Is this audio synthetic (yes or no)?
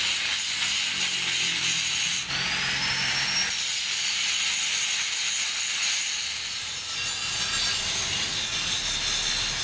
no